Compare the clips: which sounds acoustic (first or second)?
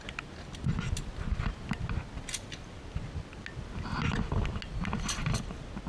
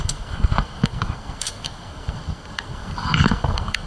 first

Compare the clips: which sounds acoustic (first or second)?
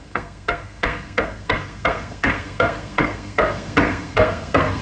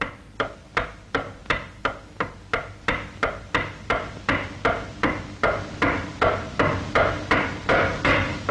second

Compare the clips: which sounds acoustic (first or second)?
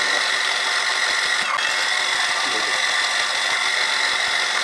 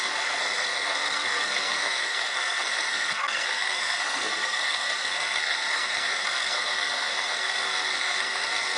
first